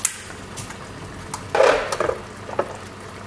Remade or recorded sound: recorded